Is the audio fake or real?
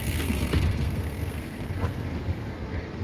fake